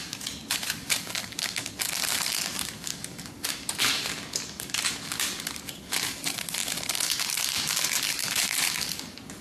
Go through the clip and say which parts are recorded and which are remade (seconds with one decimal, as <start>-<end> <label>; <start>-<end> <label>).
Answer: 0.0-9.4 remade